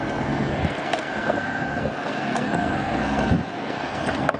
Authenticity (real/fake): fake